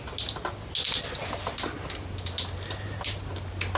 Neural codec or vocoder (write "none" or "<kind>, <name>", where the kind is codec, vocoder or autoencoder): none